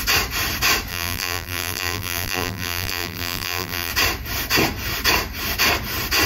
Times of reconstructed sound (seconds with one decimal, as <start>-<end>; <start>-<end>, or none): 0.9-3.9